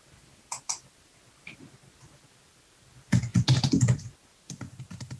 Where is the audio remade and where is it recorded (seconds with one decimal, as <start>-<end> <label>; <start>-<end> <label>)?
0.0-5.2 recorded